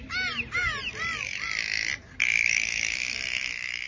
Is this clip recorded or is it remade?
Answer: recorded